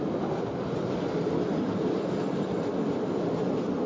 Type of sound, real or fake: real